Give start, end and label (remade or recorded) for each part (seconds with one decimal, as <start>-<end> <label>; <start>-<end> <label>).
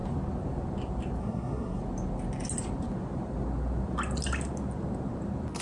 0.0-1.2 recorded; 1.2-1.8 remade; 1.8-5.6 recorded